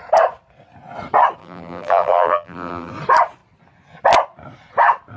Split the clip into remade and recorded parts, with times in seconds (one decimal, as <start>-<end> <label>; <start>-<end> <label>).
0.0-1.4 recorded; 1.4-2.9 remade; 2.9-5.2 recorded